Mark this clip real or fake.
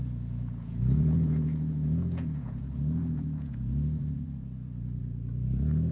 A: fake